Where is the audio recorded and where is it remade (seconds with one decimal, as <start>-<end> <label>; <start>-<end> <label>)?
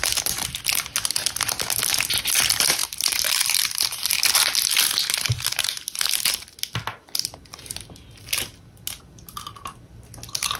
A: 0.0-2.8 recorded; 2.8-4.1 remade; 4.1-10.6 recorded